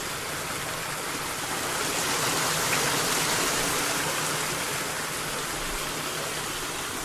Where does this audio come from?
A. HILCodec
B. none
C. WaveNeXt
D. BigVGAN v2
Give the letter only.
B